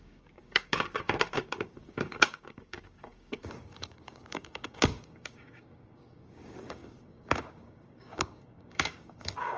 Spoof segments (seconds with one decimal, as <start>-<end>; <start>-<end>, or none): 0.0-9.6